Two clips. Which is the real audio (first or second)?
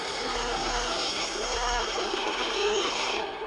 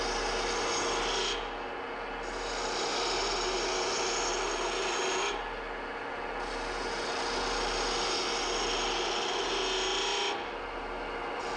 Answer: second